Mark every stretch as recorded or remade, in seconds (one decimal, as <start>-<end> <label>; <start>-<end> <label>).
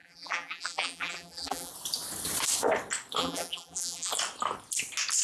0.0-1.7 remade; 1.7-3.2 recorded; 3.2-4.1 remade; 4.1-5.2 recorded